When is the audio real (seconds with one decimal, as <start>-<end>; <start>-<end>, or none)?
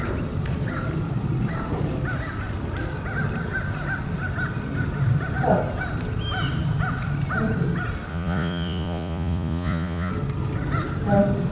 0.0-8.1; 10.1-11.5